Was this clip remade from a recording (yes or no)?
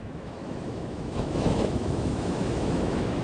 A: yes